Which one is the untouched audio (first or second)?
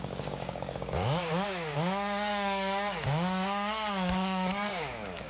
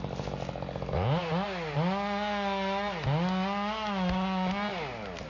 second